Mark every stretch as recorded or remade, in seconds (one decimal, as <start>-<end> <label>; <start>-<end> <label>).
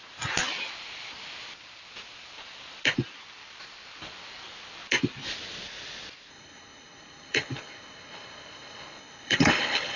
0.0-6.3 recorded; 6.3-10.0 remade